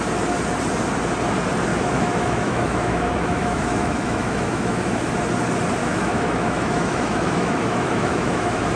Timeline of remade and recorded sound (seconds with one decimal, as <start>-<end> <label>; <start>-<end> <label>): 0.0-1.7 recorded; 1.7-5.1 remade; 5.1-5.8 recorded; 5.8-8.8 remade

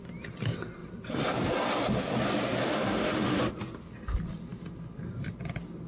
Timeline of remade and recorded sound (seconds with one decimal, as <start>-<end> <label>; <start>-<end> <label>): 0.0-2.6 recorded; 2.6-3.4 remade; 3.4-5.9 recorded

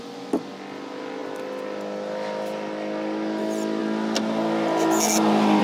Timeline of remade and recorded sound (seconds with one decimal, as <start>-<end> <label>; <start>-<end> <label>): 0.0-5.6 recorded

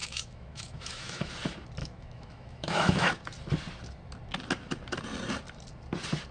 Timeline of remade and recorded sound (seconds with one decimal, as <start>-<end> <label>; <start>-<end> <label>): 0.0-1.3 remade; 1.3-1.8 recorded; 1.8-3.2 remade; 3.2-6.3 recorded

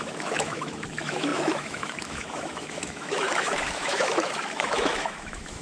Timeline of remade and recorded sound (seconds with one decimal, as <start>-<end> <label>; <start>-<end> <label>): 0.0-5.6 remade

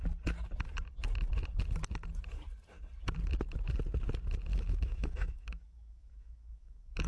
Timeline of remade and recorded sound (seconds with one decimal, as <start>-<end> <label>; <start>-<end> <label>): 0.0-4.5 recorded; 4.5-7.1 remade